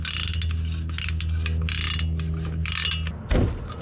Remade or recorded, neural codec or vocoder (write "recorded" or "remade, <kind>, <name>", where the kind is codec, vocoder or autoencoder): recorded